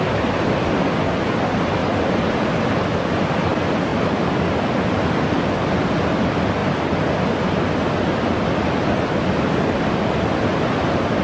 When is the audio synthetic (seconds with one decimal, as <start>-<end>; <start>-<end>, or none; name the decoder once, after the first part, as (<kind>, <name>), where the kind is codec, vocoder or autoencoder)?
3.9-4.5 (vocoder, BigVGAN v2)